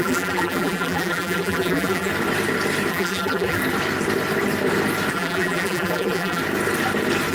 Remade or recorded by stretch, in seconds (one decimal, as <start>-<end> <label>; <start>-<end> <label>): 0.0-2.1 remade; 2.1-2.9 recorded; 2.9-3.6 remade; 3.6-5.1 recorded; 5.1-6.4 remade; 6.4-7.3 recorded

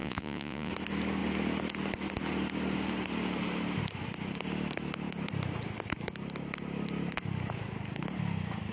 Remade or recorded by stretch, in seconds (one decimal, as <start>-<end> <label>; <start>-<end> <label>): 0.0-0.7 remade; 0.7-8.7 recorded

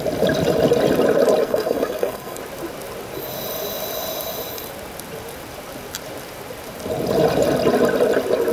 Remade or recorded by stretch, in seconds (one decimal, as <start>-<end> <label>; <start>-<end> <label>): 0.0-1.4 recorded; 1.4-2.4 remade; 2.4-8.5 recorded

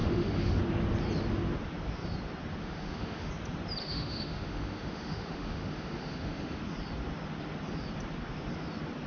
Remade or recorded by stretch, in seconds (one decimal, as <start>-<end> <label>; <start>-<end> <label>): 0.0-0.6 remade; 0.6-2.6 recorded; 2.6-3.3 remade; 3.3-3.8 recorded; 3.8-6.6 remade; 6.6-9.1 recorded

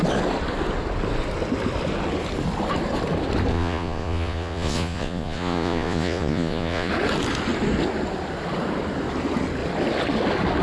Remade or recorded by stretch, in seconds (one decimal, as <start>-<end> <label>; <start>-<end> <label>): 0.0-3.5 recorded; 3.5-6.9 remade; 6.9-10.6 recorded